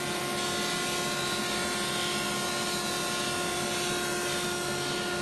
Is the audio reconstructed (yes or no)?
no